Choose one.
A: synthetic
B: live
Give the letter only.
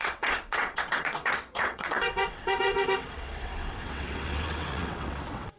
A